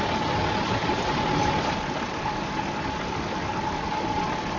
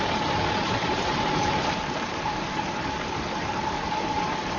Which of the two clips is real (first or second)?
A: first